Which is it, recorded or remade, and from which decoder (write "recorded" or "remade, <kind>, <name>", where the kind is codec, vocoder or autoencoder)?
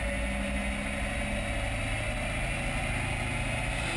recorded